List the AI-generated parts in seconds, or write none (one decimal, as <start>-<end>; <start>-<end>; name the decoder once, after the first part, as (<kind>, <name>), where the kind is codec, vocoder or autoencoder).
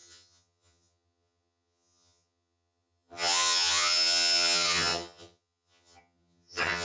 0.0-6.8 (vocoder, HiFi-GAN)